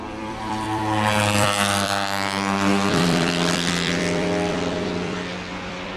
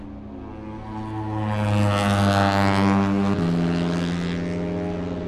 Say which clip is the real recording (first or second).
second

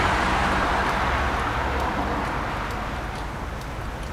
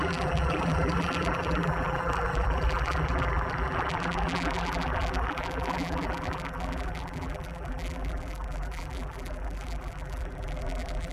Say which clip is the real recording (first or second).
first